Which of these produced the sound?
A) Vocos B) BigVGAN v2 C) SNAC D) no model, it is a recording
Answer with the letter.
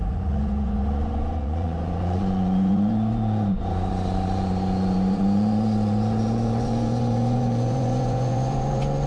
A